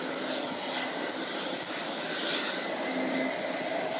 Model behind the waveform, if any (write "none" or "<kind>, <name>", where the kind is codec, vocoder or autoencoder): none